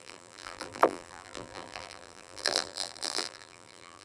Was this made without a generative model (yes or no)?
no